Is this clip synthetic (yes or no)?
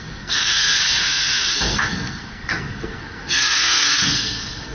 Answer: yes